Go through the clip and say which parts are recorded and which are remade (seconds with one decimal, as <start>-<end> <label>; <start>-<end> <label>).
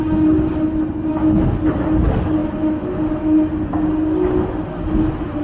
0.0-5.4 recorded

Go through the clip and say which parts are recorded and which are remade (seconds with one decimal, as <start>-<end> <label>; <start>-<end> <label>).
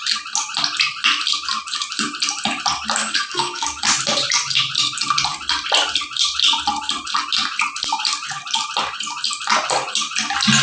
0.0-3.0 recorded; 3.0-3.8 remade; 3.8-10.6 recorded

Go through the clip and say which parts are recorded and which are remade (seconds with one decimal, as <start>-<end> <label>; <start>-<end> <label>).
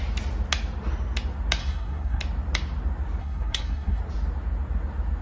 0.0-1.6 recorded; 1.6-2.2 remade; 2.2-3.2 recorded; 3.2-4.0 remade; 4.0-5.2 recorded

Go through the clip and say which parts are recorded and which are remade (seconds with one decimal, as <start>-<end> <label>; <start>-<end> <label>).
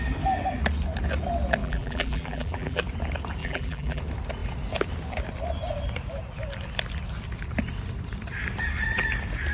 0.0-1.6 recorded; 1.6-2.8 remade; 2.8-3.4 recorded; 3.4-4.0 remade; 4.0-9.5 recorded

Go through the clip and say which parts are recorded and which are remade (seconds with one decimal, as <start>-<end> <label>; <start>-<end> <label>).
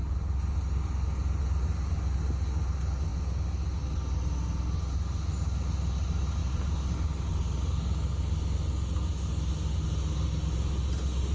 0.0-6.4 recorded; 6.4-7.3 remade; 7.3-11.3 recorded